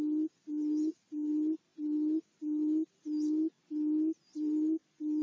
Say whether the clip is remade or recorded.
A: recorded